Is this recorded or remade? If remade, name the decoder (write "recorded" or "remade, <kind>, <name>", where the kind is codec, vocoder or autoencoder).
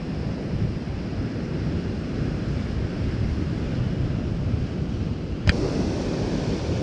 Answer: recorded